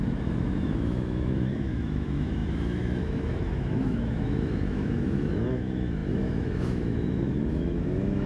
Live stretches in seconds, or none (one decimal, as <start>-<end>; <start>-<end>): none